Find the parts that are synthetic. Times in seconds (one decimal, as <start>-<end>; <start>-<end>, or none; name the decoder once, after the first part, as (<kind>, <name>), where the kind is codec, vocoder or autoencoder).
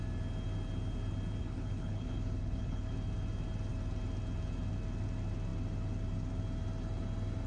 1.4-2.9 (codec, HILCodec)